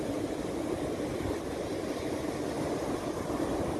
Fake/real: real